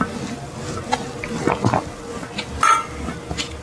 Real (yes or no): yes